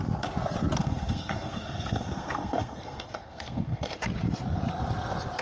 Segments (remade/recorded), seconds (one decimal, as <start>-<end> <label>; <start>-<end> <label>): 0.0-0.8 recorded; 0.8-4.0 remade; 4.0-5.4 recorded